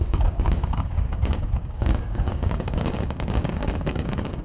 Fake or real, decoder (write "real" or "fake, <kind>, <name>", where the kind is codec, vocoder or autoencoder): fake, codec, DAC